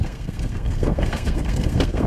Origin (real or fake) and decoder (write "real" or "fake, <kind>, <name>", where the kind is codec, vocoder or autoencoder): fake, codec, SNAC